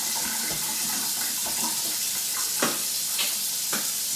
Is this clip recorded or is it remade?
recorded